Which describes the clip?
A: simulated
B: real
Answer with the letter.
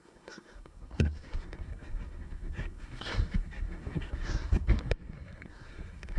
A